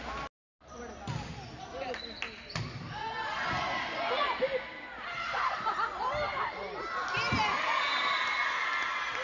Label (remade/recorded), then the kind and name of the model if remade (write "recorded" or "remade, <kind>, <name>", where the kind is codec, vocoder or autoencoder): recorded